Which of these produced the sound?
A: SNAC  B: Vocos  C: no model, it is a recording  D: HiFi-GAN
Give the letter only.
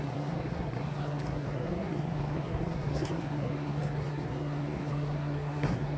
A